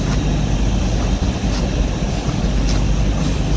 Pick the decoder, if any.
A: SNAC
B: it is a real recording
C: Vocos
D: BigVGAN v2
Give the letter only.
B